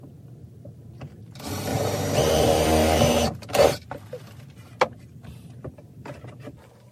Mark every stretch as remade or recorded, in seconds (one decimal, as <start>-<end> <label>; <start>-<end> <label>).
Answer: 0.0-0.4 recorded; 0.4-1.2 remade; 1.2-1.7 recorded; 1.7-3.7 remade; 3.7-6.9 recorded